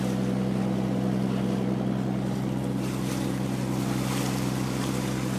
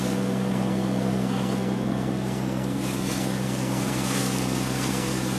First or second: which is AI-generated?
second